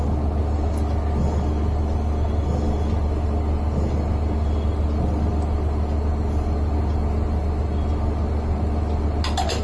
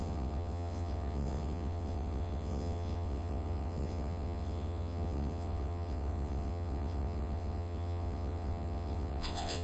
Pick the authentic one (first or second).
first